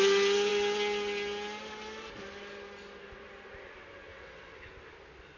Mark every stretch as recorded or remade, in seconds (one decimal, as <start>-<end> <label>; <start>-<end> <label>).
0.0-4.1 recorded; 4.1-4.7 remade; 4.7-5.4 recorded